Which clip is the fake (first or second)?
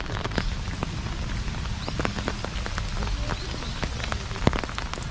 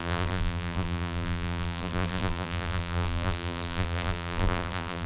second